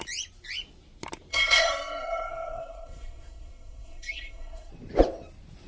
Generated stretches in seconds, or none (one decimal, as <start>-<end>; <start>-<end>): 1.3-4.7